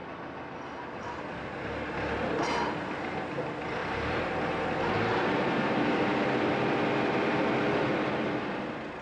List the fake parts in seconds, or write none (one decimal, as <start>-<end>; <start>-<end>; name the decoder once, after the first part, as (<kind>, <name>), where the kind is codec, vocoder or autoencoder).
none